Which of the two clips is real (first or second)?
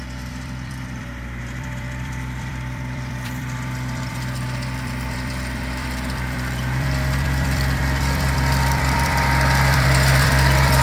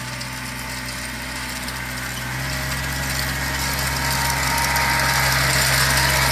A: second